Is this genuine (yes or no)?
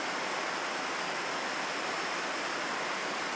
yes